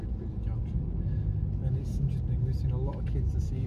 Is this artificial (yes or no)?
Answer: no